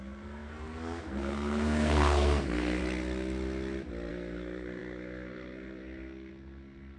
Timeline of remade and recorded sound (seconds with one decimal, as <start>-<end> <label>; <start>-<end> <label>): 0.0-2.8 remade; 2.8-4.1 recorded; 4.1-7.0 remade